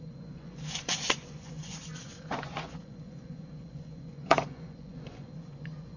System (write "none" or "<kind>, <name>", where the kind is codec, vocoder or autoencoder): vocoder, Vocos